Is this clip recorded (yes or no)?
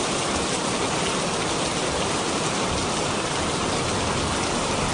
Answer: yes